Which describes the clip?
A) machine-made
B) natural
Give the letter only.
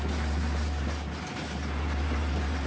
B